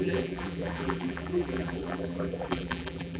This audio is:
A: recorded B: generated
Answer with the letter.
B